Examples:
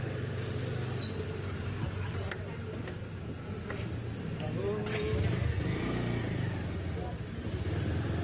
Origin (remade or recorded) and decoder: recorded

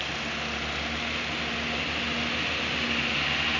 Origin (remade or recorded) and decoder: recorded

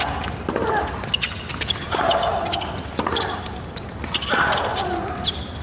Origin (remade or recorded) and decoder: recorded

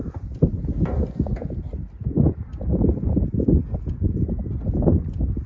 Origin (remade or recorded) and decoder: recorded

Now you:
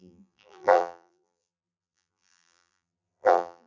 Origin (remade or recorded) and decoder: remade, vocoder, BigVGAN v2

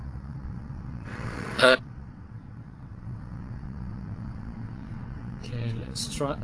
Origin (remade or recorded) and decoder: remade, vocoder, WaveNeXt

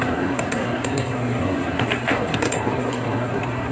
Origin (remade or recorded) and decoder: remade, codec, SNAC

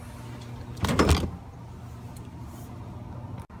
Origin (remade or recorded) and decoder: recorded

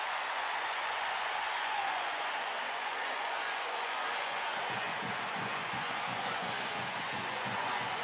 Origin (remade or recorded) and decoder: remade, vocoder, Vocos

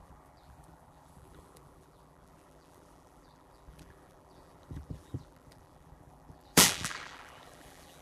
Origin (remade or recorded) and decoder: remade, vocoder, BigVGAN v2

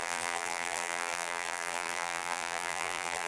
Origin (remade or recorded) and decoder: remade, vocoder, BigVGAN v2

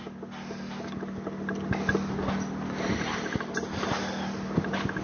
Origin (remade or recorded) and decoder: remade, vocoder, BigVGAN v2